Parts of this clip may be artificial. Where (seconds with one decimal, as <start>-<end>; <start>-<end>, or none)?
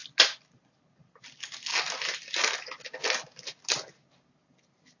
none